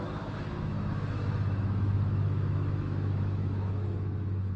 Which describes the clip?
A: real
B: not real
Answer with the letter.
B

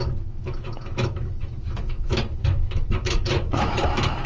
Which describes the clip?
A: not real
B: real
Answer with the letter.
A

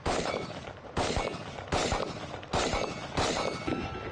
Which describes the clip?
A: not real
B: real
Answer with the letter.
B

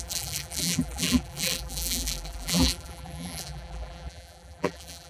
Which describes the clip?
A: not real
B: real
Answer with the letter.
A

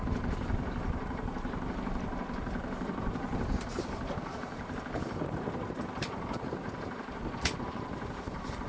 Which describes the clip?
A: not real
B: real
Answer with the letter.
A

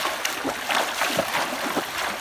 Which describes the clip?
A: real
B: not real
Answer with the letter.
A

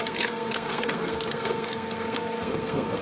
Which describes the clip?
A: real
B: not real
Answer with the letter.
B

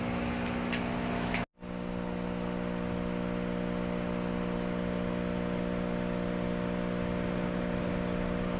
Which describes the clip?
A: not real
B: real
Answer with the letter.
B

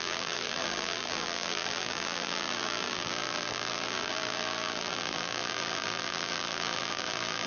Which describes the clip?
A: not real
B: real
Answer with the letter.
A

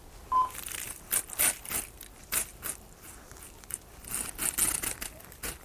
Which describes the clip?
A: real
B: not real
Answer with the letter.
A